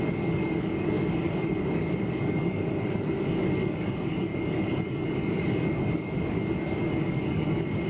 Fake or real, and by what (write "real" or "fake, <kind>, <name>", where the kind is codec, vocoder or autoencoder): fake, codec, DAC